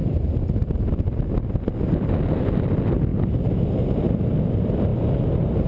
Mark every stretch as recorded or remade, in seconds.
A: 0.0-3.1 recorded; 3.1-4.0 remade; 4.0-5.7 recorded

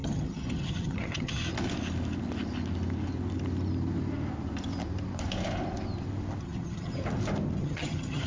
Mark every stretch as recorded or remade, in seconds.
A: 0.0-1.5 remade; 1.5-6.4 recorded; 6.4-7.0 remade; 7.0-7.6 recorded; 7.6-8.3 remade

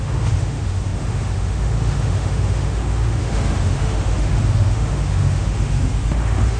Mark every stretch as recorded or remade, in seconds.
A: 0.0-6.6 remade

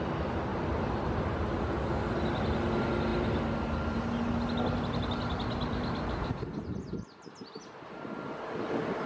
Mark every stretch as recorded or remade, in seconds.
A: 0.0-0.5 recorded; 0.5-1.7 remade; 1.7-9.1 recorded

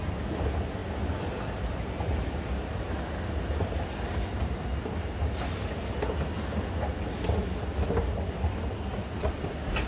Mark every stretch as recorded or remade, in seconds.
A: 0.0-9.9 recorded

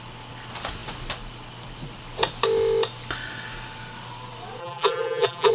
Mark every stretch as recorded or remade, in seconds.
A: 0.0-4.6 recorded; 4.6-5.5 remade